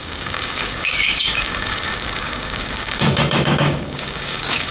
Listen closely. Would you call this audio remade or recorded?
remade